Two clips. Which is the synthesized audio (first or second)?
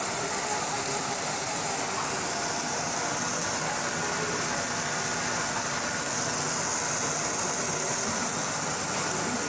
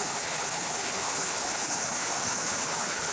second